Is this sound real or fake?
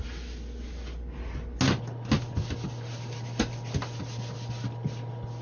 real